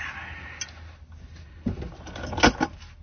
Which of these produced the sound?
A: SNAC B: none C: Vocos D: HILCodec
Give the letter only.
B